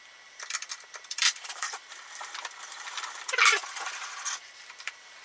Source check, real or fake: fake